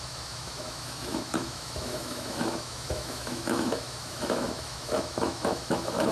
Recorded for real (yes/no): no